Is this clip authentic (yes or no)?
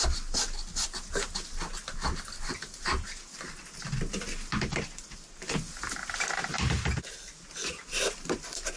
yes